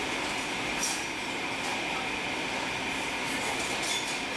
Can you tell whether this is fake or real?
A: real